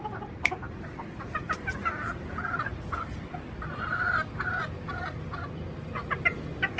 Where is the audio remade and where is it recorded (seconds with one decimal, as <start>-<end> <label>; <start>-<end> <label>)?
0.0-3.9 recorded; 3.9-4.6 remade; 4.6-6.8 recorded